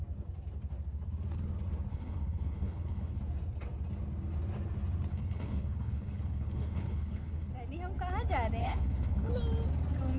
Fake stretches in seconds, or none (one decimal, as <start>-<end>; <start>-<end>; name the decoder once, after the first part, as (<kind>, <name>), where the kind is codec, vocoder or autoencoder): 1.9-3.2 (codec, HILCodec); 5.1-7.5; 8.6-9.3